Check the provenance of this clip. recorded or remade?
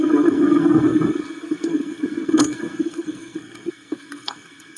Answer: remade